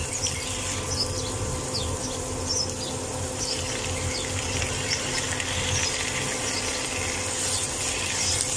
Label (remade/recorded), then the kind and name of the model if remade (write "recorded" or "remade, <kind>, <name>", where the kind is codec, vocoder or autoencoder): recorded